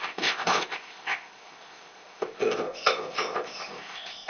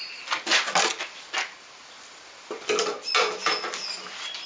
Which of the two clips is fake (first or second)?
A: first